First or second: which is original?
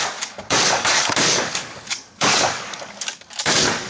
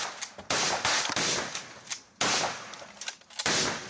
second